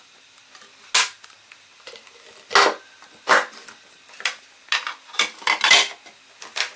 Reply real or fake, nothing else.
real